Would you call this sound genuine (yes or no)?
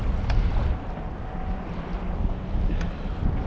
yes